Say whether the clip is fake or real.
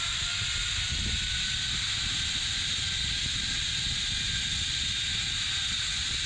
real